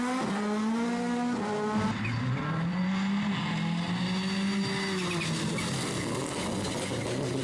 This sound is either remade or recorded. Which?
recorded